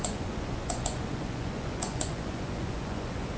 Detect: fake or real fake